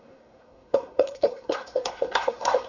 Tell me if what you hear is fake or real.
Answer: fake